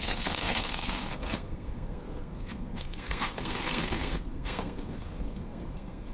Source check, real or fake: fake